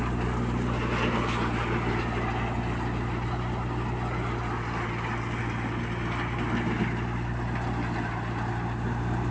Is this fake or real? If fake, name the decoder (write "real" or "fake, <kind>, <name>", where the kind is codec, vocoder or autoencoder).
real